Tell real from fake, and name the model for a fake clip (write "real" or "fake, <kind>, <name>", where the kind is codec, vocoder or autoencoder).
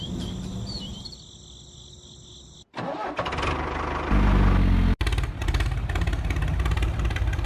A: real